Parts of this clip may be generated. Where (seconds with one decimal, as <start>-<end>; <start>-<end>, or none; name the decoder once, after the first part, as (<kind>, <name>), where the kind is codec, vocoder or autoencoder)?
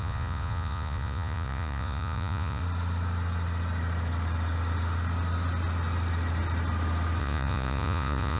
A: 0.0-2.6 (vocoder, Vocos); 7.2-8.4